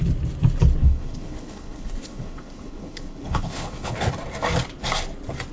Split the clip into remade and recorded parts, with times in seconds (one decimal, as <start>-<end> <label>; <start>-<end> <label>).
0.0-0.8 recorded; 0.8-4.1 remade; 4.1-5.5 recorded